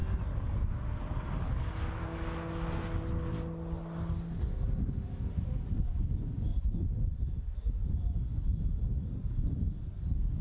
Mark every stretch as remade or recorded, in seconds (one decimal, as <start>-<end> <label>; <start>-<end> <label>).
0.0-10.4 recorded